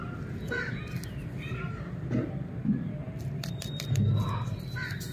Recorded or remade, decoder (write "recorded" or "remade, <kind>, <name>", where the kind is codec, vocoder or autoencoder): recorded